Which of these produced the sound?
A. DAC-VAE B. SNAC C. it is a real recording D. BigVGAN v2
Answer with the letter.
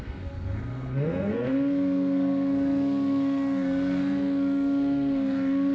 B